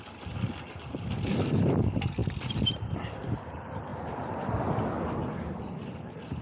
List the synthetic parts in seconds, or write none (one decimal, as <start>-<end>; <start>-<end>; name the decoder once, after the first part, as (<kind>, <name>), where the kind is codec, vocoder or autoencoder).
none